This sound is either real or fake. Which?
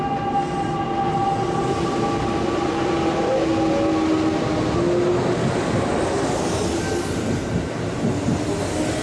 real